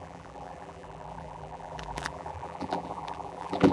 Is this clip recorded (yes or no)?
no